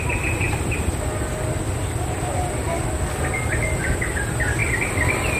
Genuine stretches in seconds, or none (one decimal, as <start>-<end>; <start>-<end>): 0.0-5.4

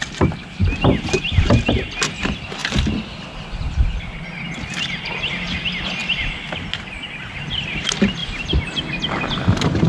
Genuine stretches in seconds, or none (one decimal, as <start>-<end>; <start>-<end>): 0.0-9.9

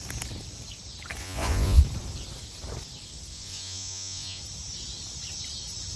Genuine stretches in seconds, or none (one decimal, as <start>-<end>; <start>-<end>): 0.0-1.2; 1.8-3.3; 4.4-6.0

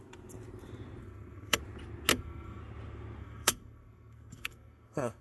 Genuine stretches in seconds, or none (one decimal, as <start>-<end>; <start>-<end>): 0.0-1.0; 1.6-2.1; 2.6-3.2